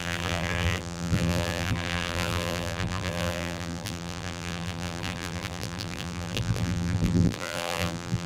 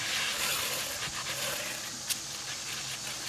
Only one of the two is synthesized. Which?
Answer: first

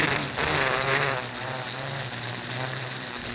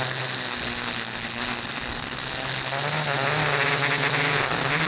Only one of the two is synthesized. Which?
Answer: first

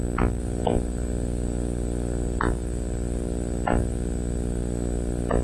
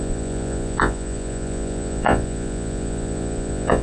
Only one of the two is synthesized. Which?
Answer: second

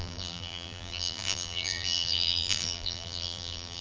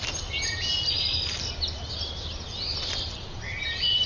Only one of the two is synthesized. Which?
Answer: first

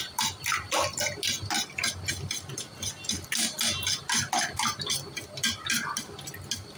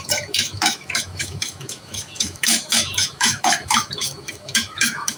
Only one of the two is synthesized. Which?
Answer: second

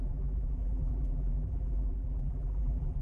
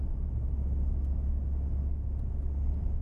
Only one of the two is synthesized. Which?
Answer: first